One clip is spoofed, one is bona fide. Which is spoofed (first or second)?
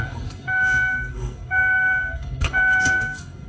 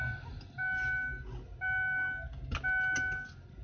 first